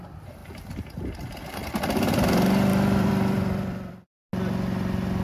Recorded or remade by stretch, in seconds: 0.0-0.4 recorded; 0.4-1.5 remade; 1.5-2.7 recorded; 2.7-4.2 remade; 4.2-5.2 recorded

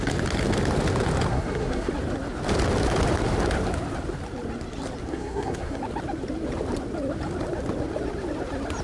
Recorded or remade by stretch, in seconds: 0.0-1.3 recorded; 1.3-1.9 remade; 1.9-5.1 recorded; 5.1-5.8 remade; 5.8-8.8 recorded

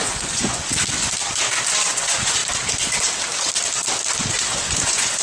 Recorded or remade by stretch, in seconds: 0.0-0.6 remade; 0.6-1.9 recorded; 1.9-2.4 remade; 2.4-4.3 recorded; 4.3-5.2 remade

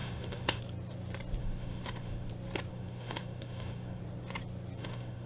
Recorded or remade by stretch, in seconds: 0.0-0.6 remade; 0.6-1.4 recorded; 1.4-2.3 remade; 2.3-2.7 recorded; 2.7-4.0 remade; 4.0-4.8 recorded; 4.8-5.3 remade

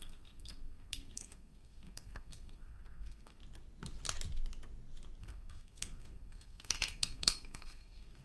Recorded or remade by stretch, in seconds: 0.0-3.4 remade; 3.4-5.2 recorded; 5.2-8.2 remade